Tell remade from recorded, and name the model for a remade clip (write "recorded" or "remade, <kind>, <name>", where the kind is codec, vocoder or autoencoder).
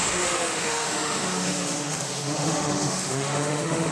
remade, autoencoder, DAC-VAE